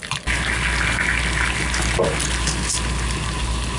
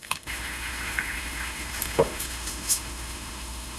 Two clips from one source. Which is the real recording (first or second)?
first